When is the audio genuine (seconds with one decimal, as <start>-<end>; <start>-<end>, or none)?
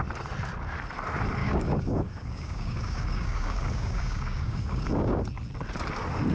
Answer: 0.0-1.4; 5.2-6.3